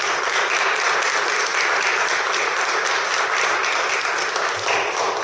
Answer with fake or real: real